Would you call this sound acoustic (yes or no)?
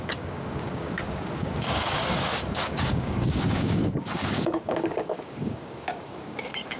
no